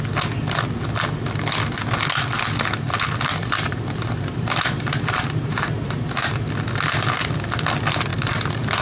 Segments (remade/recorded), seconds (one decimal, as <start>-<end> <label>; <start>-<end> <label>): 0.0-3.4 recorded; 3.4-6.3 remade; 6.3-8.1 recorded; 8.1-8.8 remade